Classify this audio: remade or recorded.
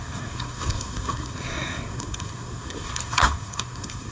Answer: remade